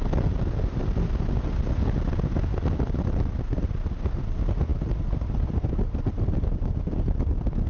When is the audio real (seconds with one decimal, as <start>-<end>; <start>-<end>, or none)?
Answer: 0.0-7.7